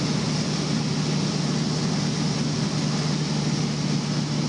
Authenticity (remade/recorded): recorded